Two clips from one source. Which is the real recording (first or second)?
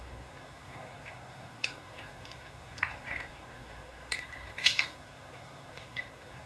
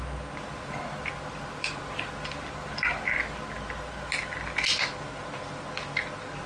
second